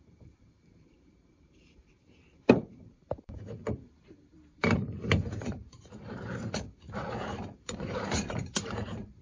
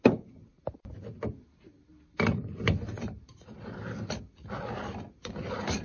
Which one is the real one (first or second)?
second